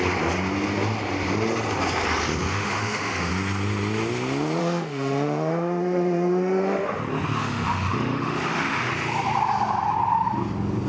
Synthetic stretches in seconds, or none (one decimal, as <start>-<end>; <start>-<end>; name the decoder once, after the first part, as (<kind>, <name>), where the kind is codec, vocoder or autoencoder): 2.5-3.3 (autoencoder, DAC-VAE); 4.6-7.0; 7.4-8.9